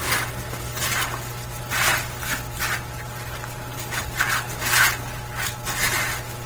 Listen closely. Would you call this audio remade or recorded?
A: recorded